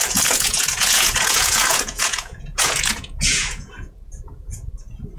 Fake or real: fake